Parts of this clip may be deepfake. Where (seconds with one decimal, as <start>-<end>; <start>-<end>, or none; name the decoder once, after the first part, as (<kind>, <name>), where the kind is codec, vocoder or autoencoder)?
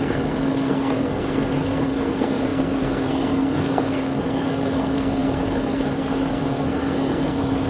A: 0.0-7.7 (codec, SNAC)